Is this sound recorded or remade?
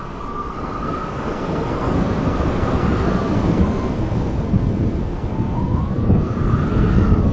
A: remade